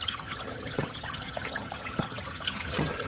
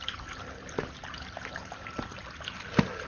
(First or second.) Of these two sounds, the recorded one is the second